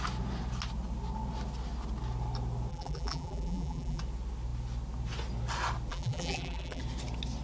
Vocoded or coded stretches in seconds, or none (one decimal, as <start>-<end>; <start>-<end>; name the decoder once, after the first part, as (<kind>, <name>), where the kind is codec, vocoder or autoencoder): 2.7-4.0 (vocoder, BigVGAN v2); 5.9-6.8